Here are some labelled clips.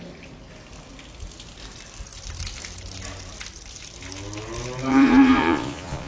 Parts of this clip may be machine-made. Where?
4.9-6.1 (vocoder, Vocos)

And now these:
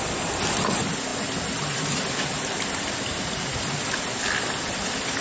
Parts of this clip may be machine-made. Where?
none

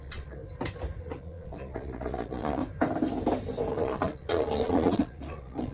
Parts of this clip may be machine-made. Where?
0.0-0.4 (vocoder, Vocos); 1.0-2.6; 3.7-5.7

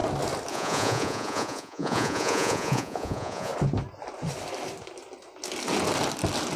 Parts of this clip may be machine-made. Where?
0.5-3.5 (vocoder, Vocos)

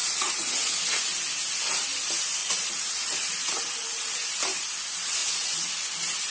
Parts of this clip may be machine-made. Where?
0.0-0.8 (vocoder, Vocos); 2.4-3.6; 5.2-5.7

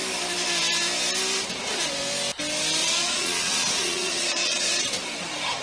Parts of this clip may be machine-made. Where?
2.8-4.9 (vocoder, Vocos)